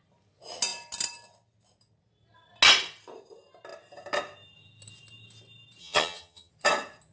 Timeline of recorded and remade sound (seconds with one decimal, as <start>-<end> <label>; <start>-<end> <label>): 0.0-5.8 recorded; 5.8-6.5 remade; 6.5-7.1 recorded